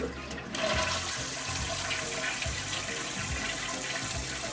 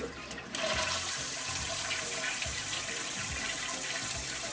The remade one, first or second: second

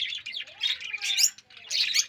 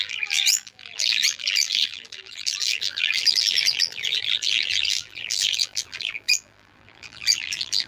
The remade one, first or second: second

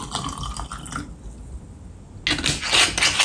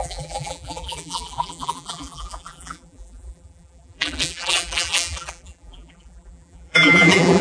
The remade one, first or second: second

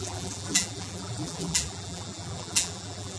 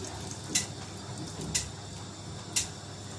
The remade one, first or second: first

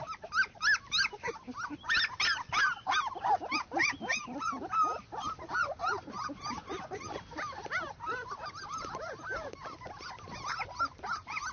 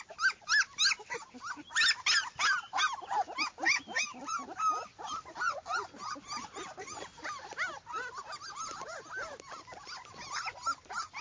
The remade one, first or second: first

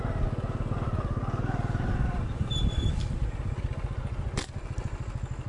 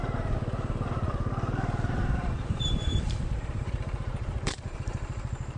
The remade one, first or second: second